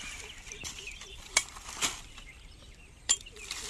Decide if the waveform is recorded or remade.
remade